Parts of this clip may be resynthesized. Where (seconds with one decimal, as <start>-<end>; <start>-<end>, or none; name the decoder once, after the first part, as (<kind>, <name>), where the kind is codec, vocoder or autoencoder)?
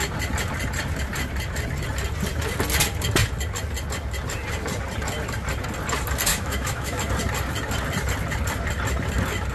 6.3-7.0 (autoencoder, DAC-VAE)